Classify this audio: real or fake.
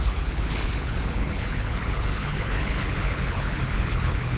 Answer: fake